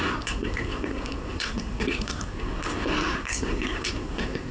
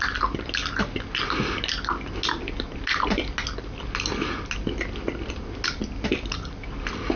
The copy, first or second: first